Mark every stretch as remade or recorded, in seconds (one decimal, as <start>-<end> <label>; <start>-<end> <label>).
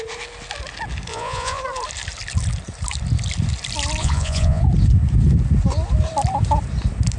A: 0.0-1.1 recorded; 1.1-1.6 remade; 1.6-4.0 recorded; 4.0-4.6 remade; 4.6-7.2 recorded